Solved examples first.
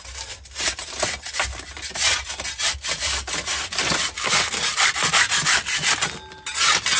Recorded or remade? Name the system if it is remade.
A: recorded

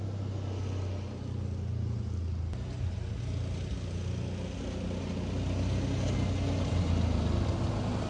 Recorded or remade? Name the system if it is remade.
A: recorded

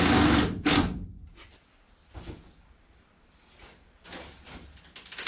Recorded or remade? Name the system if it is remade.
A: recorded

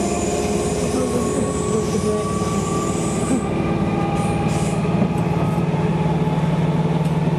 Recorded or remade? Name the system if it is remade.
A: recorded